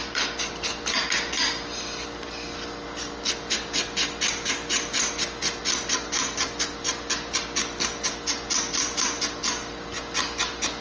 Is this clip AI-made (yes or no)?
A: no